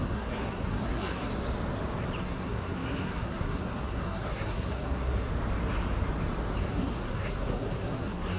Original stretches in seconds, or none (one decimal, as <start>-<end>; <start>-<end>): 1.3-2.2; 5.3-6.7